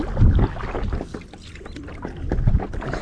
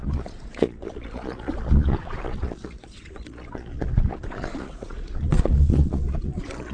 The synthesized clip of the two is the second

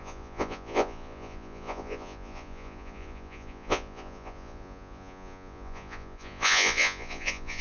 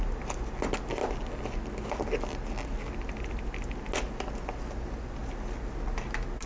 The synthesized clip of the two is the first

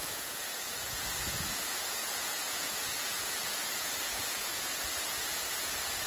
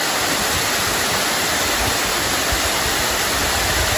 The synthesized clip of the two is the first